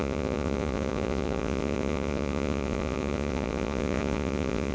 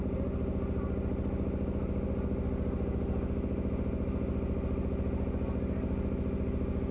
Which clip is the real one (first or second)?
second